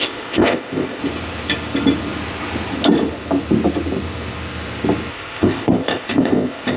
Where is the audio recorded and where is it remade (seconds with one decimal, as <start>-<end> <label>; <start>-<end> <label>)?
0.0-1.0 remade; 1.0-5.1 recorded; 5.1-6.8 remade